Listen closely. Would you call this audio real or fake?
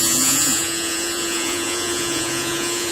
fake